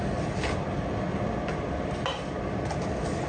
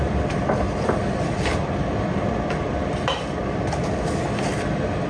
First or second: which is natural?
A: first